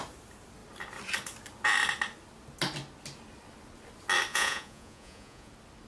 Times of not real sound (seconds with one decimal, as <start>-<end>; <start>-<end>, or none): 4.3-5.5